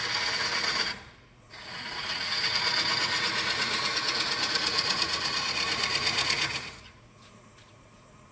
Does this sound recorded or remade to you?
remade